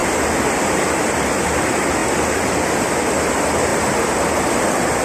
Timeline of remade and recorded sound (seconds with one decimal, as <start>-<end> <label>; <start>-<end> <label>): 0.0-1.5 recorded; 1.5-3.7 remade; 3.7-4.4 recorded; 4.4-5.0 remade